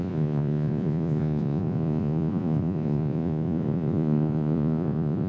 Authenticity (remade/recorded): remade